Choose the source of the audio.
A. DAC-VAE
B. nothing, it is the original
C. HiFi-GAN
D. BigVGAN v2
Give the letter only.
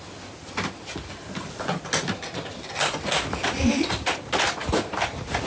B